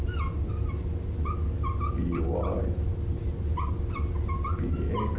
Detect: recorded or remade recorded